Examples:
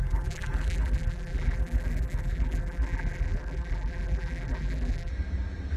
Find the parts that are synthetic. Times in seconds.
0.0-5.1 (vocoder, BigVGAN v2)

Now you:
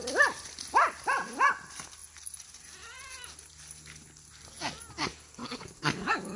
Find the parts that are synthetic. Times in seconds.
5.4-6.4 (codec, DAC)

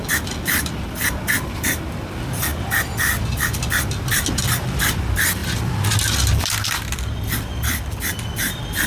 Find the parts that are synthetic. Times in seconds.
none

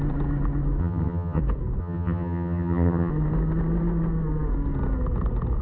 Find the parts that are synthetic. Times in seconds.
0.8-1.4 (vocoder, HiFi-GAN); 1.8-3.1

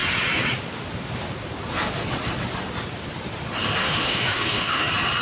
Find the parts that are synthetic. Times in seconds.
3.8-4.8 (autoencoder, DAC-VAE)